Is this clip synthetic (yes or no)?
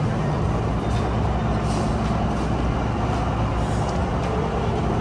no